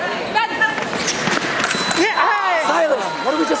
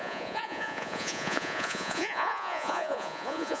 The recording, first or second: first